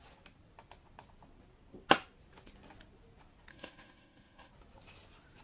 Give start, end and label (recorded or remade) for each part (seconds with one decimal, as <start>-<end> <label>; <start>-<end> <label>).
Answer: 0.0-3.5 recorded; 3.5-4.5 remade; 4.5-5.4 recorded